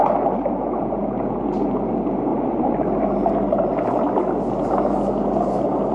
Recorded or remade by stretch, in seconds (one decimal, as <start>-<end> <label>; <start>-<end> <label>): 0.0-2.3 recorded; 2.3-2.8 remade; 2.8-5.9 recorded